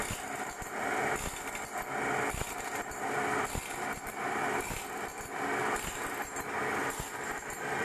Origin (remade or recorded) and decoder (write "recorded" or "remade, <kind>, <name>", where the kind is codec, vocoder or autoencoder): recorded